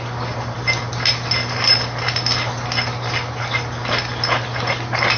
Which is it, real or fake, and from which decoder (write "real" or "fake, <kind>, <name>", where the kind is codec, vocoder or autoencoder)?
real